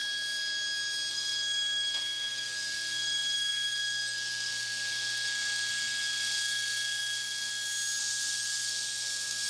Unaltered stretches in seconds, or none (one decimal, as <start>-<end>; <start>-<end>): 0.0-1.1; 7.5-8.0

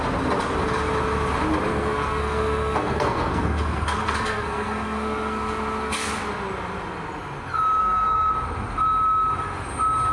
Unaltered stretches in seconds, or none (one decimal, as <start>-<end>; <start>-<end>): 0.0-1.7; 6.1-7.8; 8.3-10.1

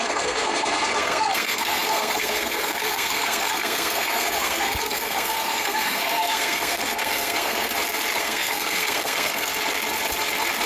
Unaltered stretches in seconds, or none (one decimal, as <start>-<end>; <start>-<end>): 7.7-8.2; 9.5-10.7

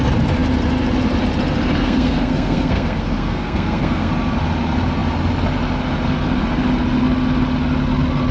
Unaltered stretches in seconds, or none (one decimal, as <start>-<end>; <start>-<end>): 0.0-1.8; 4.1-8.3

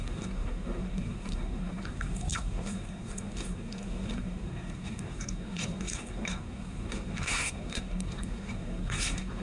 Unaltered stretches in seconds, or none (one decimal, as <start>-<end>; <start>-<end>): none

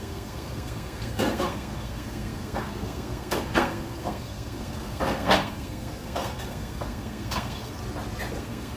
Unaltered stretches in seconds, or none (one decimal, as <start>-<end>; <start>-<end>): 7.8-8.3

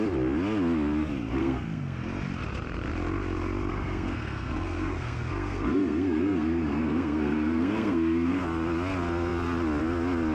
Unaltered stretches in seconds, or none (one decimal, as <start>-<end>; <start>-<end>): 0.0-1.4; 2.0-3.7; 8.4-10.3

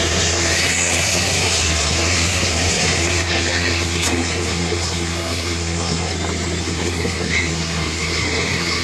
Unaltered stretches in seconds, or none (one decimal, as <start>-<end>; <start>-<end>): 6.1-6.6